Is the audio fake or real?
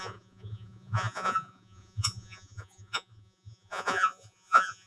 fake